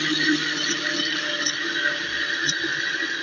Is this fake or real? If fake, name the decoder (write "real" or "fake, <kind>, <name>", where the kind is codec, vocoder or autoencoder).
real